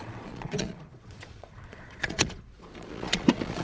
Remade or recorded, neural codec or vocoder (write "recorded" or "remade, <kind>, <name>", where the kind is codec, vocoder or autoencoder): remade, vocoder, Vocos